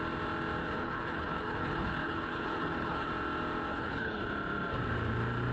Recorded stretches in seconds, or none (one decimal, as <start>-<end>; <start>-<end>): 0.0-0.6; 3.1-3.7; 4.2-5.5